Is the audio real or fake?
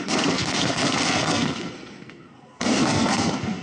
fake